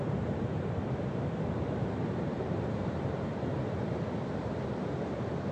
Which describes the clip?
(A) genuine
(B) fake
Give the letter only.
B